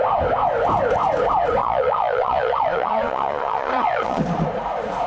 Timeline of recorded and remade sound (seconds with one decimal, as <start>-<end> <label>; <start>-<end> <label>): 0.0-1.6 recorded; 1.6-4.2 remade; 4.2-5.1 recorded